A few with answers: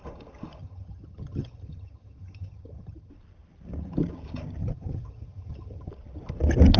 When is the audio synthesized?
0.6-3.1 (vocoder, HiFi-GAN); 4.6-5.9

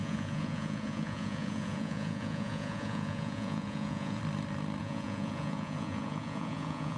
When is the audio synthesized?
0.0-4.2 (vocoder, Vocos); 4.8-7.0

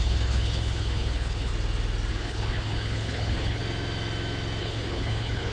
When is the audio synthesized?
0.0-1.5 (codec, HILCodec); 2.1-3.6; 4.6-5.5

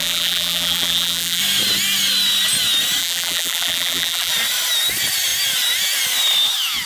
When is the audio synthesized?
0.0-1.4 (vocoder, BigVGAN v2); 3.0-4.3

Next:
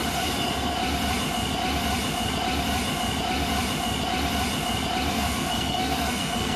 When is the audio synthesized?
5.1-6.6 (codec, SNAC)